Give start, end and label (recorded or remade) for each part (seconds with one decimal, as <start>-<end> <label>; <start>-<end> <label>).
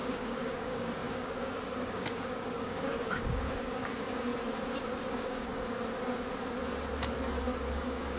0.0-4.3 remade; 4.3-5.1 recorded; 5.1-5.5 remade; 5.5-7.4 recorded; 7.4-8.2 remade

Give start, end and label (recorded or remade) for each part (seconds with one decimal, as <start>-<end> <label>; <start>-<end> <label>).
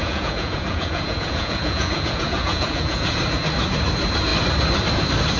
0.0-3.2 remade; 3.2-5.4 recorded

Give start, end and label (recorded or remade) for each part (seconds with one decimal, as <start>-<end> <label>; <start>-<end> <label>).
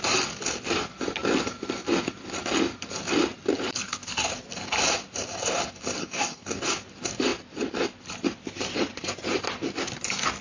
0.0-6.0 recorded; 6.0-6.6 remade; 6.6-10.4 recorded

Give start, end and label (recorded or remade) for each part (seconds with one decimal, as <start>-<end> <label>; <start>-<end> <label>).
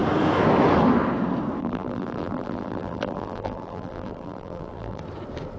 0.0-1.6 recorded; 1.6-5.0 remade; 5.0-5.6 recorded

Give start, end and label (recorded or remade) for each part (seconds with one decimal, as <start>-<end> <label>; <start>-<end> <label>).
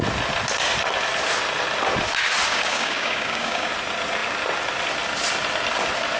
0.0-2.5 recorded; 2.5-3.7 remade; 3.7-6.2 recorded